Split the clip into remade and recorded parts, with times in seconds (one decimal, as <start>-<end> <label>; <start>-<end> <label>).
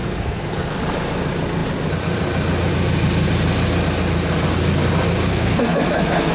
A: 0.0-0.8 remade; 0.8-5.3 recorded; 5.3-6.3 remade